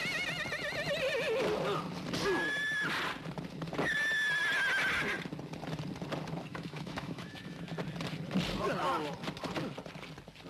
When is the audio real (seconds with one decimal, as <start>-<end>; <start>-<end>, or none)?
0.0-6.5; 7.7-10.5